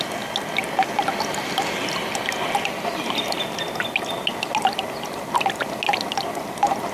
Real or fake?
real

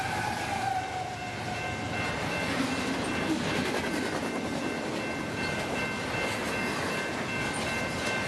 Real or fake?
real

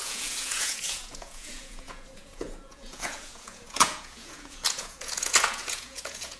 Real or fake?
fake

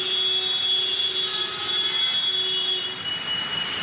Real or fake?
real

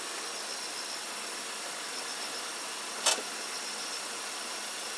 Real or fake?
real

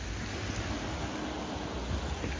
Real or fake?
real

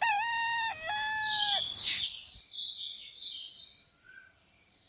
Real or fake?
real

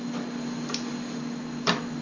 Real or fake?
real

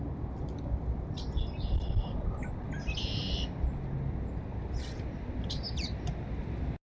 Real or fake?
real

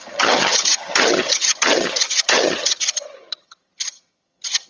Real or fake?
fake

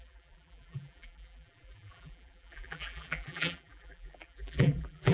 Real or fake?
fake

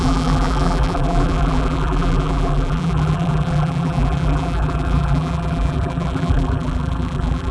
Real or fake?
fake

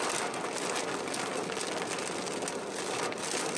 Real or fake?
real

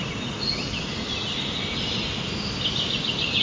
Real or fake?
real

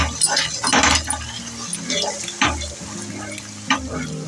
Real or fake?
real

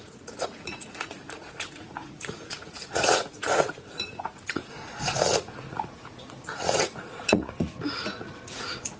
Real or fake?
fake